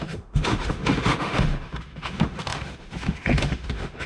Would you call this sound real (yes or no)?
no